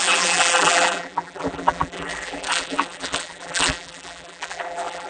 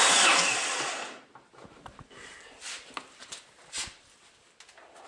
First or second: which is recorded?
second